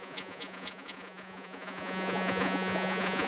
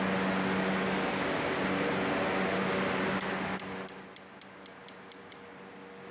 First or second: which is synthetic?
first